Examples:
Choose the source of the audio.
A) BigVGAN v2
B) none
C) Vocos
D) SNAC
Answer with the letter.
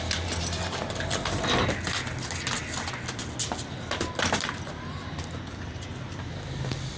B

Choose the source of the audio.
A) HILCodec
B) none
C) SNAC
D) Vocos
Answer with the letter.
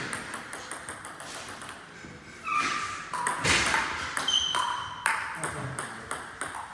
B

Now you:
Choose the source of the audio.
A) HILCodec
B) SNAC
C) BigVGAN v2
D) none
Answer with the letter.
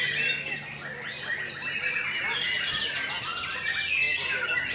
D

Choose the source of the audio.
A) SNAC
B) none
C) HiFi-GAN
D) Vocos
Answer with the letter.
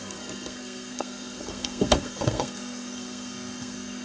A